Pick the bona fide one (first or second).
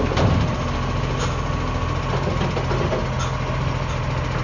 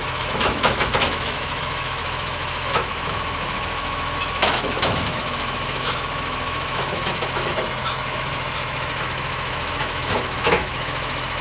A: first